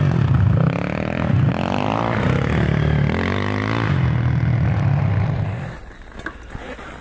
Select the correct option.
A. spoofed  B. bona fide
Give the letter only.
B